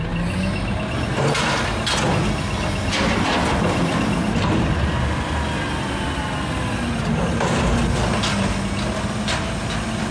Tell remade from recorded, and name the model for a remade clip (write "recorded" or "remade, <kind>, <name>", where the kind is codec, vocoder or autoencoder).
recorded